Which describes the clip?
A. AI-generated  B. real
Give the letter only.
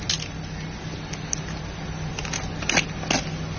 B